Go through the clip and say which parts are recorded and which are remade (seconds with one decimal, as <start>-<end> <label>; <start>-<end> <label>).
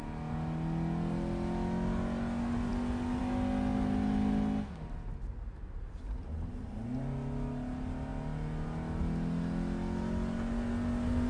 0.0-11.3 recorded